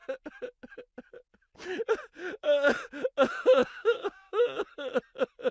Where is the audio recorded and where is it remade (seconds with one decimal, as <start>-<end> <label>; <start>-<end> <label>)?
0.0-3.6 recorded; 3.6-4.7 remade; 4.7-5.5 recorded